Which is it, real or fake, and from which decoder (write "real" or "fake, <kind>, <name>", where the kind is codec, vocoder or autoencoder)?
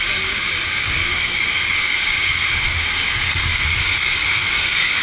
fake, codec, DAC